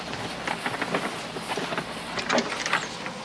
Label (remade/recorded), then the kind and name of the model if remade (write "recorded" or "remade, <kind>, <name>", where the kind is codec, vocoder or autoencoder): recorded